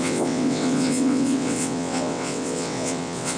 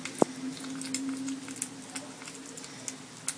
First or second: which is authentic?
second